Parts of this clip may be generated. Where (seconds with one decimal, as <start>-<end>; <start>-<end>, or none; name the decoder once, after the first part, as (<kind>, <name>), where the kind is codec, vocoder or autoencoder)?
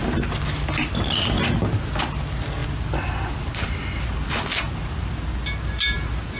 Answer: none